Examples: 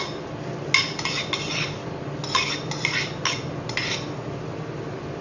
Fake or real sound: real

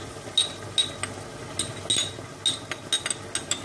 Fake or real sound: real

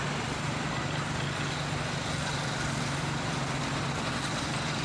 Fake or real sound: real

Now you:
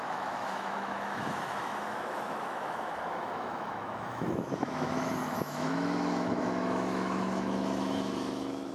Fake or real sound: fake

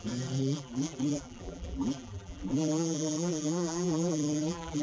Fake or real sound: fake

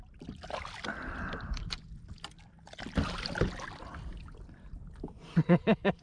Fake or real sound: real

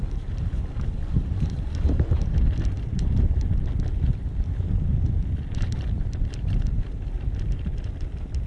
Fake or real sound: real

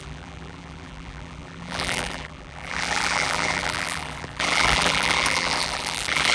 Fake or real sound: fake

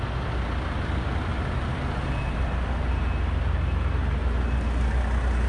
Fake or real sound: real